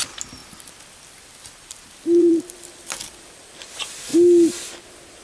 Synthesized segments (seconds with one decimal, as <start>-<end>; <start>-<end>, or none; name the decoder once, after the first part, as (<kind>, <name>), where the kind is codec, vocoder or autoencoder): 0.4-3.5 (vocoder, BigVGAN v2)